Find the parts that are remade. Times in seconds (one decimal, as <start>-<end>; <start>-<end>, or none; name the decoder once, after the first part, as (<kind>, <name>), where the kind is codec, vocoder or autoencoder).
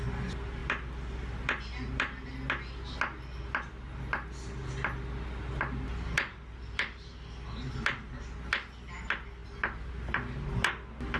none